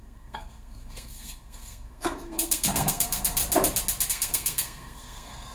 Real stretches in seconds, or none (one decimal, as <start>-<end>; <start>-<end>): 3.4-4.1